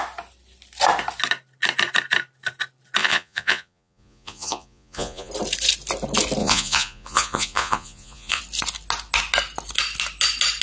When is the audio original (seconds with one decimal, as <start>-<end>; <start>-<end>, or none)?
0.0-3.0; 5.3-6.4; 8.4-10.6